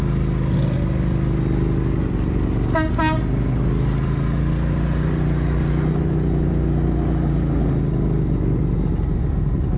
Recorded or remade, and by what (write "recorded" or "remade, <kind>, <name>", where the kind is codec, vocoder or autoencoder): recorded